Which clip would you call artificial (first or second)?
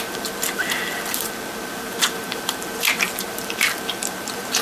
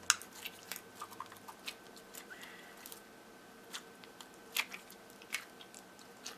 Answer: first